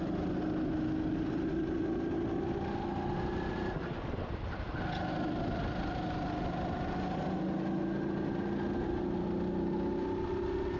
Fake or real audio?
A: real